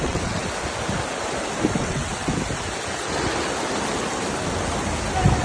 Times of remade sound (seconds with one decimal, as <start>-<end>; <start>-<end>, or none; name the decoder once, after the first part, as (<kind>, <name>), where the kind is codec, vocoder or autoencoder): 0.0-0.4 (vocoder, WaveNeXt); 1.8-2.3